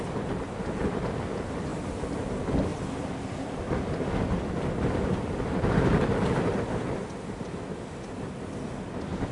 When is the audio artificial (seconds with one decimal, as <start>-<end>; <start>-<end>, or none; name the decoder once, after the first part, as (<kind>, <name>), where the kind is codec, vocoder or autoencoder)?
none